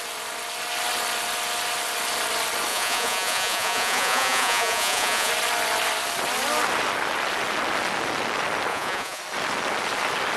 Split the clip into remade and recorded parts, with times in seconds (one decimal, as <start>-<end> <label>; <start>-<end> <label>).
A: 0.0-2.7 recorded; 2.7-5.3 remade; 5.3-8.7 recorded; 8.7-9.2 remade; 9.2-10.4 recorded